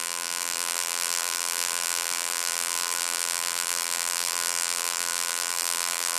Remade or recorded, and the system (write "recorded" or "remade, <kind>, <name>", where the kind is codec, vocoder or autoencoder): remade, vocoder, BigVGAN v2